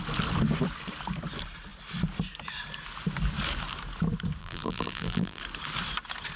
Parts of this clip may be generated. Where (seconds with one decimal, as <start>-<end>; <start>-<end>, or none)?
4.4-5.4